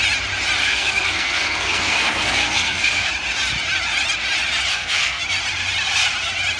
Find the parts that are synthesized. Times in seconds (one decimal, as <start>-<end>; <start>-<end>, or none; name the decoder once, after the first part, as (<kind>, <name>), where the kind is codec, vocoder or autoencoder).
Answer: 0.6-3.1 (codec, SNAC); 4.7-5.2